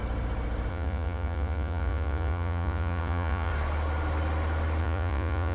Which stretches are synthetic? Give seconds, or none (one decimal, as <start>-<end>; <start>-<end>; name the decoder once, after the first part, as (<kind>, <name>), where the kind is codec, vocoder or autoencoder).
0.7-3.5 (vocoder, Vocos); 4.8-5.5

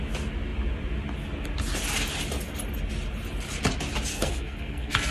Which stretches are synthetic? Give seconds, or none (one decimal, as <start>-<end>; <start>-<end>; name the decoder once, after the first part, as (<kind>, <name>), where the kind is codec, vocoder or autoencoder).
4.1-5.1 (codec, SNAC)

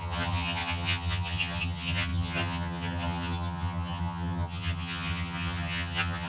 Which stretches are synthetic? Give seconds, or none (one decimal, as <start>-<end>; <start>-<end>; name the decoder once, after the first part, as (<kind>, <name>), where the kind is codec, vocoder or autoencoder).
0.0-6.3 (vocoder, HiFi-GAN)

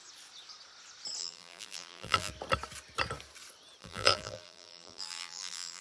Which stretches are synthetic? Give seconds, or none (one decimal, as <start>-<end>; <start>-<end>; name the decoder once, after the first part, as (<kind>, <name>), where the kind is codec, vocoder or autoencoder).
1.2-2.3 (vocoder, BigVGAN v2); 3.8-5.8

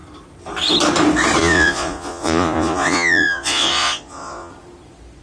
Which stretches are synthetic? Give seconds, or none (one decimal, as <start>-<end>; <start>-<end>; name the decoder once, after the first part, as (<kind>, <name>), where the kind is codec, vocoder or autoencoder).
1.4-4.5 (vocoder, Vocos)

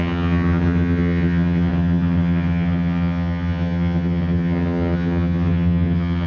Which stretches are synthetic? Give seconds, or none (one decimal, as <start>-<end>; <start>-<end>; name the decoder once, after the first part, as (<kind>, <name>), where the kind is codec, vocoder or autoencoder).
0.0-6.3 (vocoder, HiFi-GAN)

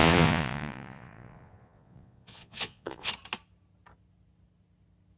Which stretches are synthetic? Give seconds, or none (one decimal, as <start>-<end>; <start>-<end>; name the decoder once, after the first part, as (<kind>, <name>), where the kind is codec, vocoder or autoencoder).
0.0-3.1 (vocoder, Vocos)

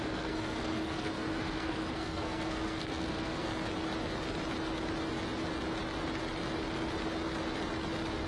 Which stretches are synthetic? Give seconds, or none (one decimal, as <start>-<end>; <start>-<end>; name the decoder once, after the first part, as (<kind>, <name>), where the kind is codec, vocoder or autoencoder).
0.0-3.5 (codec, SNAC)